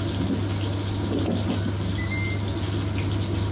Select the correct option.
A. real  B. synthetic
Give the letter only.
A